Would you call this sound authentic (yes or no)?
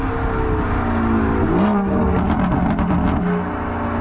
yes